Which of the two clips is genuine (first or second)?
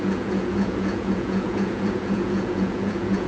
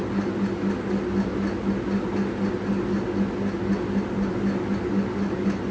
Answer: second